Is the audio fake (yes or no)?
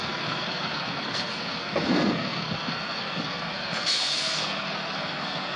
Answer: yes